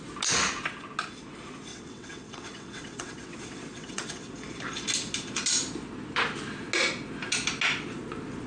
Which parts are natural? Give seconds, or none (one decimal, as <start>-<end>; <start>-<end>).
0.0-1.7; 4.3-8.5